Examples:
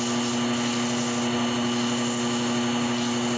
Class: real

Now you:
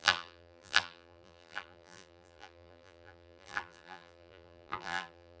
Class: fake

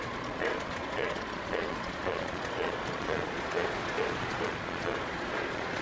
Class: fake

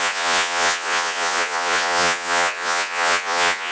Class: fake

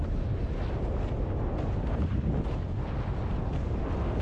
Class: real